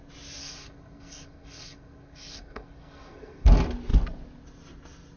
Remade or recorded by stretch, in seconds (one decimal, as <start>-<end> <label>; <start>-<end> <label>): 0.0-0.4 recorded; 0.4-3.5 remade; 3.5-5.2 recorded